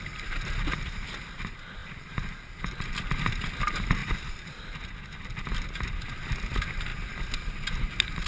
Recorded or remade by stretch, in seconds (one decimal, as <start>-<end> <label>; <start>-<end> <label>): 0.0-8.3 recorded